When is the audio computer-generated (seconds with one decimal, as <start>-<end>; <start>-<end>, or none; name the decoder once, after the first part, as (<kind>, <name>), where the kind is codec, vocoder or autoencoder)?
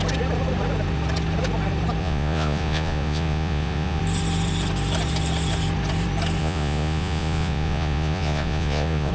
2.0-4.0 (vocoder, Vocos); 6.4-9.1